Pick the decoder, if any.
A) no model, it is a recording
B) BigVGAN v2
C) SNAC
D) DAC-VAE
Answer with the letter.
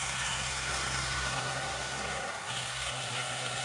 C